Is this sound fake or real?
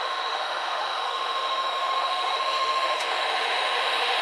fake